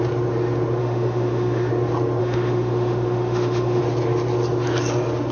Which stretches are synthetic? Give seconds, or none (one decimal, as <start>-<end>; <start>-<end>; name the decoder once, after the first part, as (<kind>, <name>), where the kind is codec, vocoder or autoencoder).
0.8-1.7 (autoencoder, DAC-VAE); 2.2-3.8

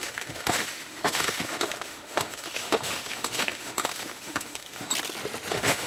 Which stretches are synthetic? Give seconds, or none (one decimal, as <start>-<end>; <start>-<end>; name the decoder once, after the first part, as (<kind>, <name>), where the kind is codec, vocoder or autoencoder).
0.0-4.9 (autoencoder, DAC-VAE); 5.5-5.9

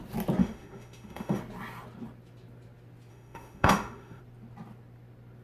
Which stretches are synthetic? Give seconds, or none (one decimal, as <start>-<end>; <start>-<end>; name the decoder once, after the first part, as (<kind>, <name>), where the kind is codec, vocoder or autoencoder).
0.4-1.4 (autoencoder, DAC-VAE); 3.1-4.2

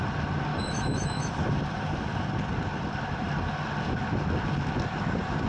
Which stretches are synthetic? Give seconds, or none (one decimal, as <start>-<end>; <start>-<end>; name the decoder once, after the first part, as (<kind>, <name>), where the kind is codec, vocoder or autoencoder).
0.5-1.3 (autoencoder, DAC-VAE)

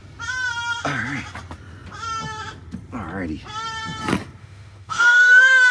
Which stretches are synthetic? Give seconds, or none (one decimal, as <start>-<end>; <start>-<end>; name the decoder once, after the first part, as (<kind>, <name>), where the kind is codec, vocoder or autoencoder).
4.4-5.7 (autoencoder, DAC-VAE)